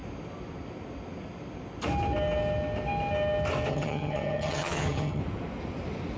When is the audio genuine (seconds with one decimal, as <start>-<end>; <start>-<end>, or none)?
0.0-3.7; 5.2-6.2